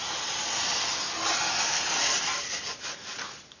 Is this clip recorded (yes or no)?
yes